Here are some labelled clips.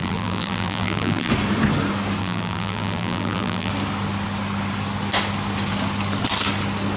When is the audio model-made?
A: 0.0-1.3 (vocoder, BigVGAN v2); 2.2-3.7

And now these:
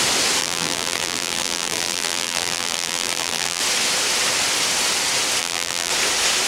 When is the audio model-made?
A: 0.4-3.6 (vocoder, BigVGAN v2); 5.4-5.9